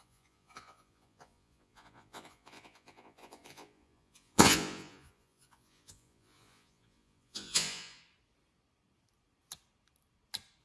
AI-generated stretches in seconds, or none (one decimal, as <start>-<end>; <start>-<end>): 0.0-8.0